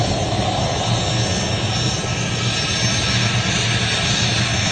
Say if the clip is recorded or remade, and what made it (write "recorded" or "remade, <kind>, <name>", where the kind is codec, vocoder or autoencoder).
recorded